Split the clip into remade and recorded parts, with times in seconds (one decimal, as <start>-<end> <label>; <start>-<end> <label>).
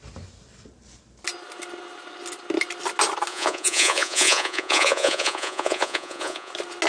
0.0-3.3 recorded; 3.3-6.5 remade; 6.5-6.9 recorded